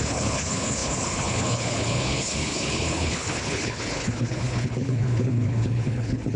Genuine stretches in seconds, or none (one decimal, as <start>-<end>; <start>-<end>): none